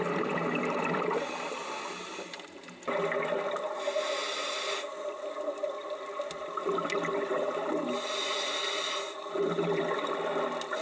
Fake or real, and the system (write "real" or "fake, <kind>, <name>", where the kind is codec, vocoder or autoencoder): real